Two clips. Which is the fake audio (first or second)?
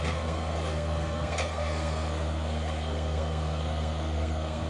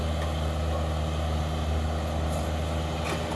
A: first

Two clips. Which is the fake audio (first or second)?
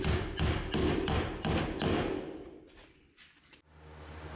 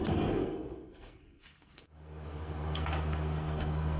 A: second